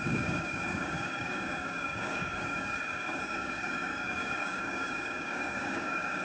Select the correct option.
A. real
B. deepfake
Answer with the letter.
B